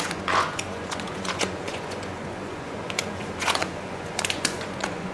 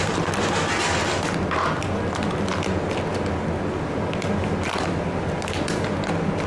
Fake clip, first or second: first